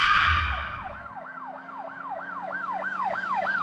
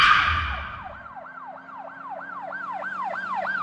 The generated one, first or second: first